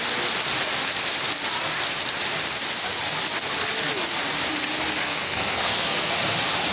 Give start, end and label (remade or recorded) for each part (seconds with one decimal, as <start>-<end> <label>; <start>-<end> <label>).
0.0-5.0 recorded; 5.0-6.1 remade; 6.1-6.7 recorded